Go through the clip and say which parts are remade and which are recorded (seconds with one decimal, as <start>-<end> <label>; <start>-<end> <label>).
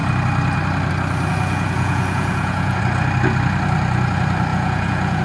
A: 0.0-1.3 recorded; 1.3-2.8 remade; 2.8-4.5 recorded; 4.5-5.2 remade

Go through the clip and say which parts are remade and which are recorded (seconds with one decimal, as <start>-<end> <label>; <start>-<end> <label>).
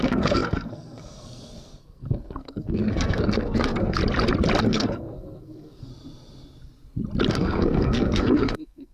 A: 0.0-4.0 remade; 4.0-4.6 recorded; 4.6-5.9 remade; 5.9-7.3 recorded; 7.3-8.9 remade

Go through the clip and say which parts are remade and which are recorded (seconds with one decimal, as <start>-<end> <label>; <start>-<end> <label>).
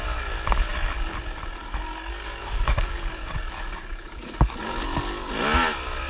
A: 0.0-0.7 recorded; 0.7-1.2 remade; 1.2-1.6 recorded; 1.6-5.3 remade; 5.3-6.1 recorded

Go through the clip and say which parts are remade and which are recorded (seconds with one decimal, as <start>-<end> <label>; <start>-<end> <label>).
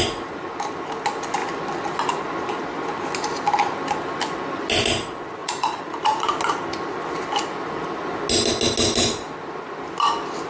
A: 0.0-5.4 recorded; 5.4-6.3 remade; 6.3-10.5 recorded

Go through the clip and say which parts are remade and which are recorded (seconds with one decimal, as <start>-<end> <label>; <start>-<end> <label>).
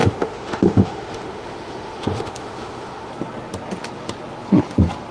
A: 0.0-3.1 remade; 3.1-5.1 recorded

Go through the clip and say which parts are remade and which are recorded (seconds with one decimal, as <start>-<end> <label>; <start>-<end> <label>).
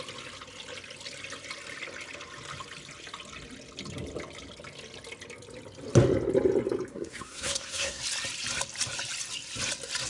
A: 0.0-6.9 recorded; 6.9-8.0 remade; 8.0-10.1 recorded